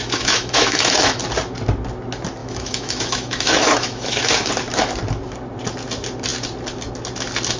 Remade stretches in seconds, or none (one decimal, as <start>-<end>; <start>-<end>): 0.0-1.2; 2.4-4.5